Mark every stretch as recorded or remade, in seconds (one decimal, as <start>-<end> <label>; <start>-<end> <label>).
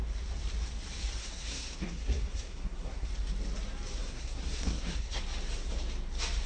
0.0-1.2 recorded; 1.2-3.1 remade; 3.1-4.0 recorded; 4.0-5.2 remade; 5.2-6.5 recorded